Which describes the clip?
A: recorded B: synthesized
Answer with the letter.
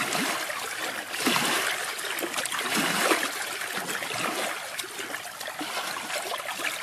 A